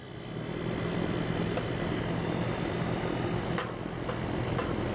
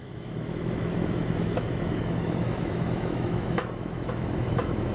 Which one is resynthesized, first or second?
second